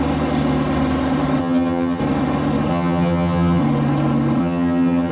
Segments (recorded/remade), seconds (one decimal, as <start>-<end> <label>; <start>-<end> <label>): 0.0-1.4 recorded; 1.4-2.0 remade; 2.0-2.7 recorded; 2.7-3.6 remade; 3.6-4.4 recorded; 4.4-5.1 remade